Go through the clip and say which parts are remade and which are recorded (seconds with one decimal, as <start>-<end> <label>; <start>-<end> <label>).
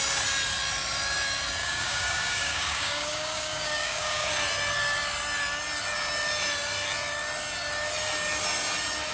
0.0-1.6 recorded; 1.6-4.3 remade; 4.3-9.1 recorded